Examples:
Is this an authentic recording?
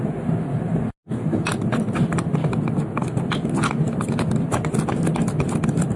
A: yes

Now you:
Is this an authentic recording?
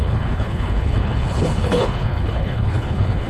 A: no